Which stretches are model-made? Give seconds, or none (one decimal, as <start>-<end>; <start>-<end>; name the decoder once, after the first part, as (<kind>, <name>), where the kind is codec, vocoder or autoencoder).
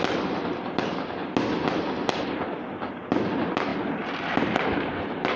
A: 3.7-5.4 (vocoder, BigVGAN v2)